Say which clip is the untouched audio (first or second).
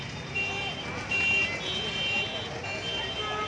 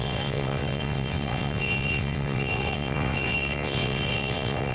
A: first